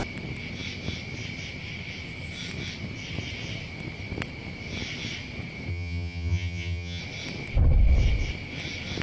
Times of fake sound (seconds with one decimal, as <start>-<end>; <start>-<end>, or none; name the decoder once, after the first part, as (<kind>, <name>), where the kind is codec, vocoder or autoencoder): 5.7-7.0 (vocoder, HiFi-GAN)